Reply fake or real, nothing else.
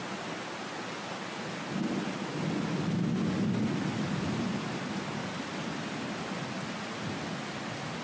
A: real